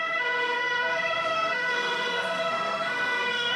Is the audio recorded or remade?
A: remade